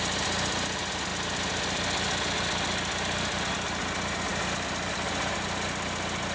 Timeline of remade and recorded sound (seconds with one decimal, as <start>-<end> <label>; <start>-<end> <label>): 0.0-6.3 recorded